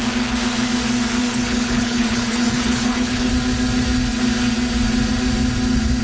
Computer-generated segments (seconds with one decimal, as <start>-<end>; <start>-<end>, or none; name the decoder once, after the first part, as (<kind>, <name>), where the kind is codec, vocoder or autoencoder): 1.2-3.3 (codec, HILCodec)

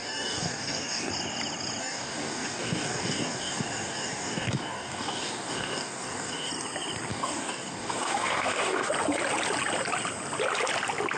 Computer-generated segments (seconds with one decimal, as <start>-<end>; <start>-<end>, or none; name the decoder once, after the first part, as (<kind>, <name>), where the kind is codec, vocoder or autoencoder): 0.0-1.1 (codec, DAC); 1.8-6.5; 7.1-8.9

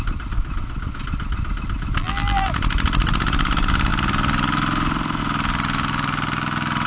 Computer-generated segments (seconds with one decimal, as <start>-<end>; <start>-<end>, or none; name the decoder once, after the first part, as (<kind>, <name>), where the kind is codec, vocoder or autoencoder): 2.0-2.5 (vocoder, BigVGAN v2)

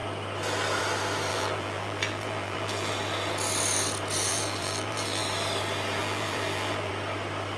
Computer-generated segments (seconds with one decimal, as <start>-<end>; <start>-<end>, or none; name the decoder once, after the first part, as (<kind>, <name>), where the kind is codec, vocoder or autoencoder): 1.3-2.9 (vocoder, BigVGAN v2); 4.3-5.2; 6.0-6.9

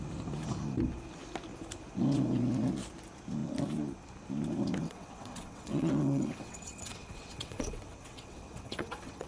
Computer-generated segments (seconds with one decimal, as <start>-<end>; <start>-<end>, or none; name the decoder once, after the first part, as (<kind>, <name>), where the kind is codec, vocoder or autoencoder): 4.8-9.3 (vocoder, WaveNeXt)